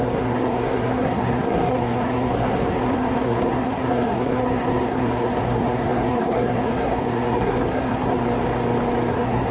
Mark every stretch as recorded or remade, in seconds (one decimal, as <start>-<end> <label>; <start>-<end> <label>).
0.0-8.2 remade; 8.2-9.1 recorded; 9.1-9.5 remade